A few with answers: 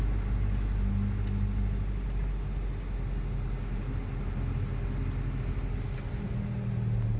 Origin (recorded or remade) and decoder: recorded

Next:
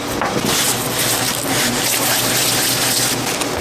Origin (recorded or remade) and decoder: recorded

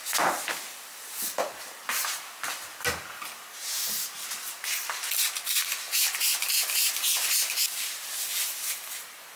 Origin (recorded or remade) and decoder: recorded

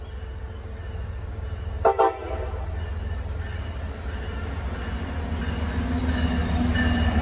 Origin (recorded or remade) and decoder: recorded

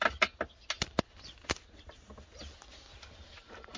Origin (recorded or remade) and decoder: recorded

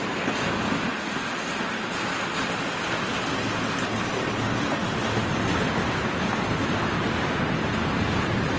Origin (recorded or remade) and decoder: recorded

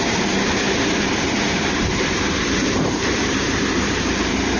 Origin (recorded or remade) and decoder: remade, vocoder, BigVGAN v2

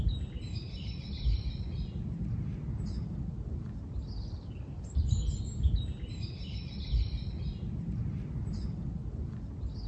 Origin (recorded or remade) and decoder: recorded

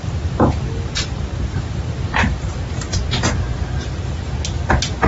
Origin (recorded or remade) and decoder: recorded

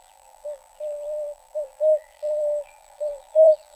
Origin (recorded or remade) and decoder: remade, vocoder, BigVGAN v2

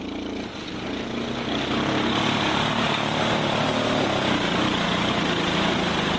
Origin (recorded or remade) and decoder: recorded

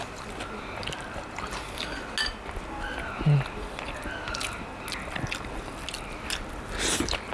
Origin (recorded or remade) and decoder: recorded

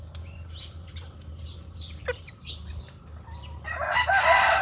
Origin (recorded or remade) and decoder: recorded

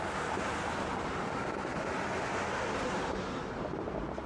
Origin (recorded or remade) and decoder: recorded